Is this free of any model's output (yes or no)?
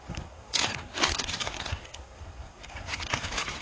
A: no